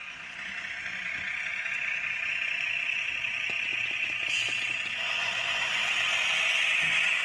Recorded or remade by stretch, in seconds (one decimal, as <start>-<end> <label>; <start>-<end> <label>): 0.0-5.8 remade; 5.8-6.5 recorded; 6.5-7.2 remade